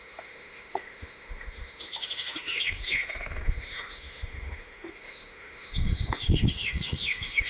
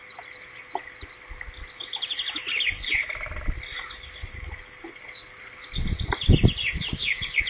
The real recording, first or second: second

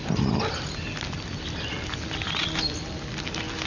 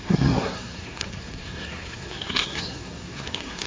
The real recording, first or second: first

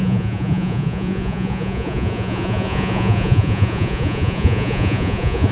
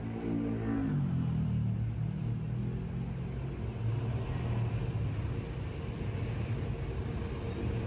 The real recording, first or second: second